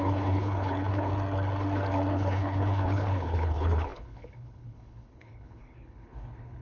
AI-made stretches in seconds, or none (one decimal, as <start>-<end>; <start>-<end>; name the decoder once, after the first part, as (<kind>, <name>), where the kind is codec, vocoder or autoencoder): 0.0-1.1 (codec, HILCodec); 2.1-6.6